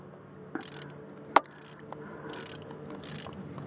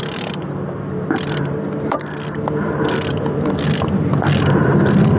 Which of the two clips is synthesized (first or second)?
second